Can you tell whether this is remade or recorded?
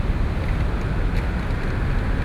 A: recorded